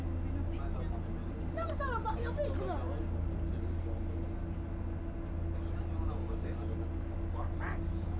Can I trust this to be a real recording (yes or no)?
yes